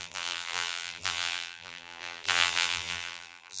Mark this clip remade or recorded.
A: remade